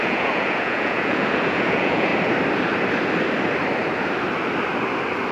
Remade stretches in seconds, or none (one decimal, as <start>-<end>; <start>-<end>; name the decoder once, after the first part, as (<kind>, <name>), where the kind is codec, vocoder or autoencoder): 0.0-2.1 (vocoder, Vocos)